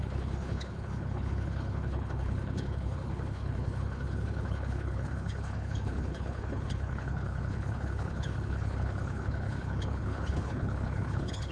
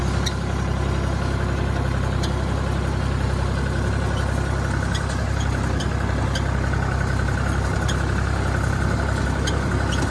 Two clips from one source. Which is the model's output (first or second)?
first